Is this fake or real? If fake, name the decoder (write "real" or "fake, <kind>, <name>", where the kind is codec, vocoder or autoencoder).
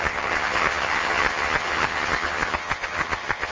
fake, vocoder, HiFi-GAN